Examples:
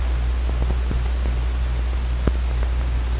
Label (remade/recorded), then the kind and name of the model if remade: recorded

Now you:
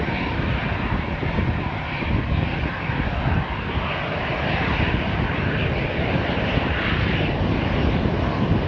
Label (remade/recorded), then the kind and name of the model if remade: recorded